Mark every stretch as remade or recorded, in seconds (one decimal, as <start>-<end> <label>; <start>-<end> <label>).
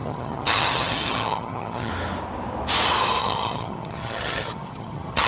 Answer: 0.0-1.9 remade; 1.9-3.2 recorded; 3.2-5.3 remade